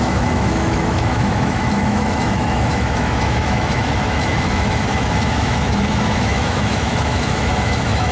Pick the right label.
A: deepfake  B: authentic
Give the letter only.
A